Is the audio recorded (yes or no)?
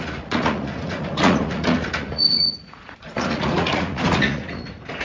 no